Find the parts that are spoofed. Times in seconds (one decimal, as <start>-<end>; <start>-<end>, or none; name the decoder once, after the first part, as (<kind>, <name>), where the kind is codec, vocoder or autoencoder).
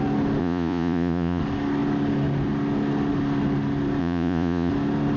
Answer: 0.4-1.4 (vocoder, Vocos); 4.0-4.7